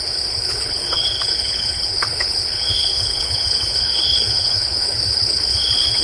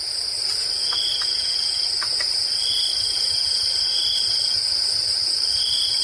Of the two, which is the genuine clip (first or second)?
second